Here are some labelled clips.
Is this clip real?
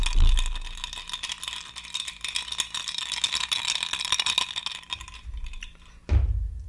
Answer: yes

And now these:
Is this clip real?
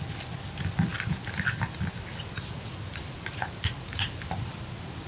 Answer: yes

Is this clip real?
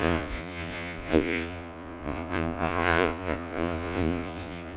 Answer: no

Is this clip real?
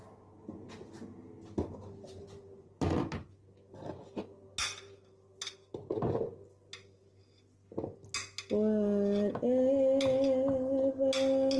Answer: yes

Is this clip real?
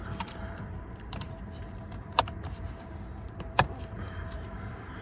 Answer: no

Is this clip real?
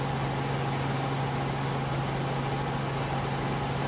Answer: yes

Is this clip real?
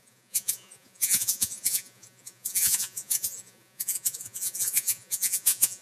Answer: no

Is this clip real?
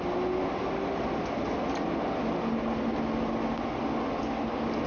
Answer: yes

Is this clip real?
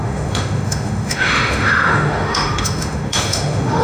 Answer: no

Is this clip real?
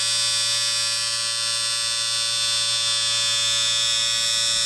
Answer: yes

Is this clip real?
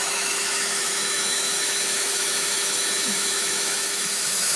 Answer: no